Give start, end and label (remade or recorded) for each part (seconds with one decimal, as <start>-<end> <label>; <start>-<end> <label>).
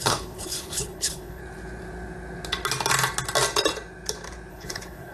0.0-1.4 remade; 1.4-4.5 recorded; 4.5-5.1 remade